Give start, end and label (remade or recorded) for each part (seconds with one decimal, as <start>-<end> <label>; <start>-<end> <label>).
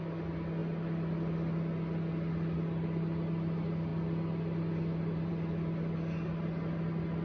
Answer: 0.0-7.2 recorded